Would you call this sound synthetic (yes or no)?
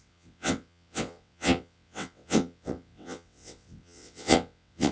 yes